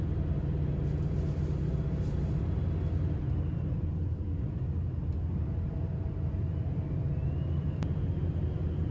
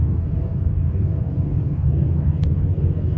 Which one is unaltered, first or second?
first